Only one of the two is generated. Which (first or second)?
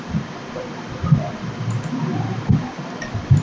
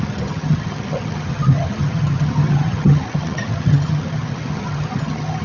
second